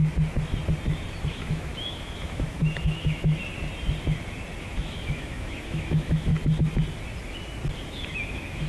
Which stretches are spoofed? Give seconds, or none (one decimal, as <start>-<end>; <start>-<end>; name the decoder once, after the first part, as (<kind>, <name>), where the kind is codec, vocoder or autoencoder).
1.3-3.4 (autoencoder, DAC-VAE); 4.6-6.3; 7.8-8.7